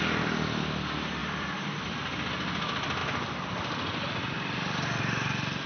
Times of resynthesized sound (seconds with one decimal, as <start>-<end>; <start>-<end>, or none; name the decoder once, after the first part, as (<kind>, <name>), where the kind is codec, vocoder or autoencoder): 1.2-1.9 (vocoder, BigVGAN v2); 3.0-5.0